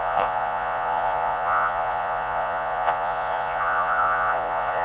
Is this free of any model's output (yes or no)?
no